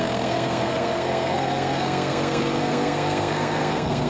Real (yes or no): no